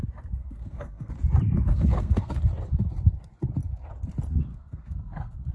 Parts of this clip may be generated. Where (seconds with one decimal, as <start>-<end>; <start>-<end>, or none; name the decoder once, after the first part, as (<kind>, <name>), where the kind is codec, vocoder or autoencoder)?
0.4-1.1 (codec, SNAC); 1.7-2.4; 4.5-5.5